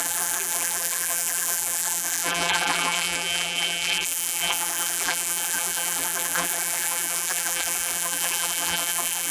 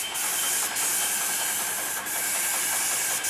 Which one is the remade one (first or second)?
first